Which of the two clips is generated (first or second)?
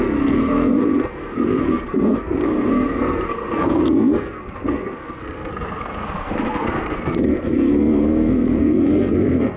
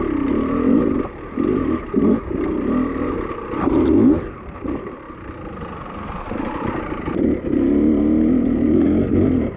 first